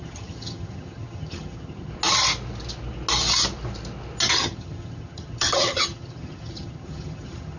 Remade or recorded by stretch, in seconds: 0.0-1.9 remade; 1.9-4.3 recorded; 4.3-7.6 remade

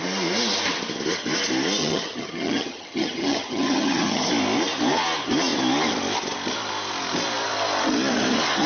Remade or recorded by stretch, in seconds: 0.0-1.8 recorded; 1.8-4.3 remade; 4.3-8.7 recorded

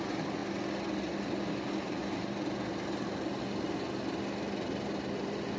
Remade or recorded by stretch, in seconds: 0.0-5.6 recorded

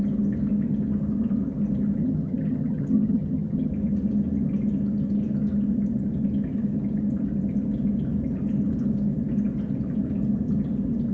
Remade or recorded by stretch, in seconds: 0.0-2.0 recorded; 2.0-3.7 remade; 3.7-11.1 recorded

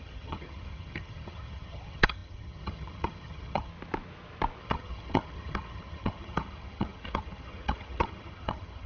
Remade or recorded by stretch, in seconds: 0.0-3.7 remade; 3.7-4.6 recorded; 4.6-8.9 remade

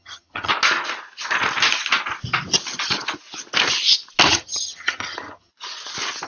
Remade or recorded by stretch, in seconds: 0.0-0.5 remade; 0.5-4.3 recorded; 4.3-5.5 remade; 5.5-6.3 recorded